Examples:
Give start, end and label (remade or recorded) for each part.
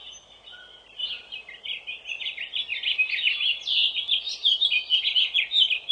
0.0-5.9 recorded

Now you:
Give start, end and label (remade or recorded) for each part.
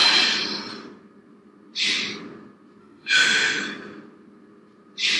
0.0-2.8 recorded; 2.8-3.6 remade; 3.6-5.2 recorded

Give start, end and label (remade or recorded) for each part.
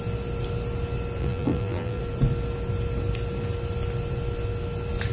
0.0-1.2 recorded; 1.2-2.0 remade; 2.0-5.1 recorded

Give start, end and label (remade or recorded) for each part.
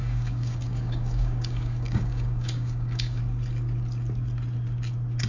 0.0-3.2 remade; 3.2-5.3 recorded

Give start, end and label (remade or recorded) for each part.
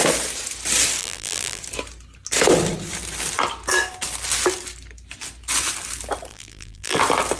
0.0-1.0 recorded; 1.0-1.6 remade; 1.6-6.3 recorded; 6.3-7.0 remade; 7.0-7.4 recorded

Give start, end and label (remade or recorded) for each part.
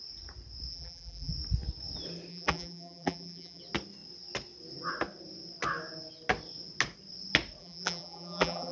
0.0-0.7 recorded; 0.7-1.3 remade; 1.3-2.3 recorded; 2.3-3.6 remade; 3.6-7.6 recorded; 7.6-8.7 remade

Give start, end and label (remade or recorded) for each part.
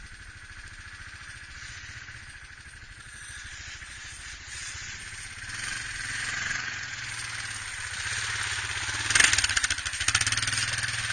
0.0-1.2 recorded; 1.2-5.0 remade; 5.0-6.3 recorded; 6.3-7.1 remade; 7.1-11.1 recorded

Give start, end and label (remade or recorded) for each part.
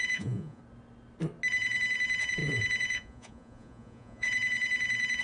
0.0-0.6 remade; 0.6-1.5 recorded; 1.5-5.2 remade